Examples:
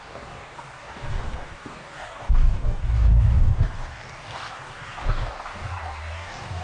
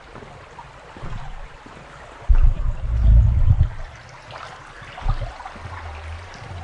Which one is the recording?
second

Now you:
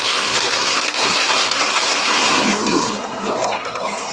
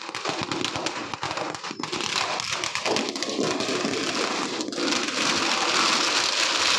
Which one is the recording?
second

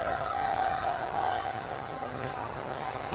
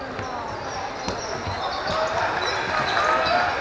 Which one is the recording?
second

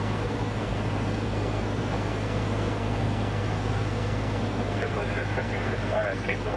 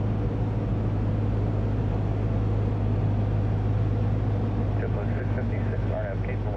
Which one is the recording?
second